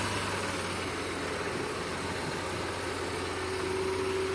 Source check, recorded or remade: recorded